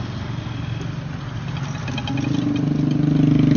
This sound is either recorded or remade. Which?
recorded